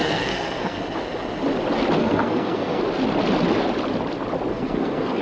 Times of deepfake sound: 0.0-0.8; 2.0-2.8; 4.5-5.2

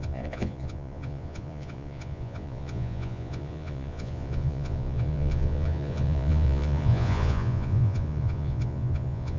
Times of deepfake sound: 0.0-9.4

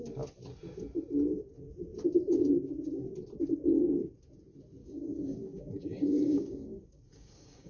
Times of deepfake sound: 4.8-7.7

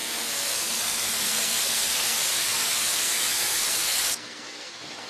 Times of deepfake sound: 0.0-5.1

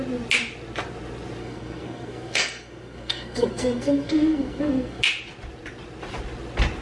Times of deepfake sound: 1.4-5.0